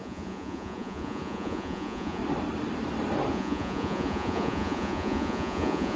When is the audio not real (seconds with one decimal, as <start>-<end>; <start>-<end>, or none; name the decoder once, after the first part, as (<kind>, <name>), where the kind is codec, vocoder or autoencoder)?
0.0-2.2 (vocoder, Vocos); 3.3-6.0

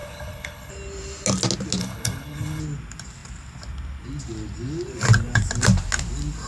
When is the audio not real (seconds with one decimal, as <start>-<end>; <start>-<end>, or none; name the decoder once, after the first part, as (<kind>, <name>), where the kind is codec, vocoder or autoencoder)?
0.0-0.7 (codec, HILCodec); 1.8-2.6

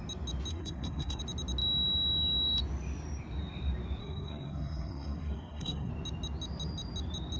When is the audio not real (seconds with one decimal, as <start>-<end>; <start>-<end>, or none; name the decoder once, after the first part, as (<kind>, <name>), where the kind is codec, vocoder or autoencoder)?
0.5-1.2 (codec, SNAC); 4.0-5.9

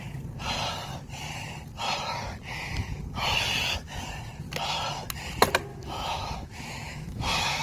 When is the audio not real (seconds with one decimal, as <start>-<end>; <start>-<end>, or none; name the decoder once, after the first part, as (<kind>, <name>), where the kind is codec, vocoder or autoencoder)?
5.7-7.6 (autoencoder, DAC-VAE)

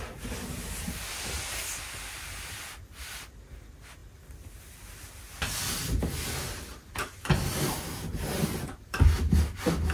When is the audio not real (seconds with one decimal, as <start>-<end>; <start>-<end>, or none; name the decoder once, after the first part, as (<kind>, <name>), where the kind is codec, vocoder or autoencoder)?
none